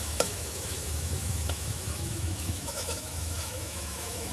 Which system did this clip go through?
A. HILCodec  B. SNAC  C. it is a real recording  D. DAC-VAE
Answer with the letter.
D